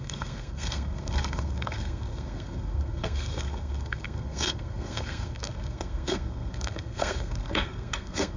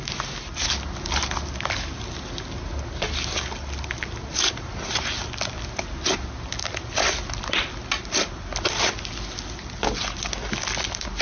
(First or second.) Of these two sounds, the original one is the second